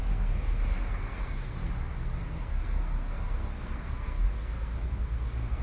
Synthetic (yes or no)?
yes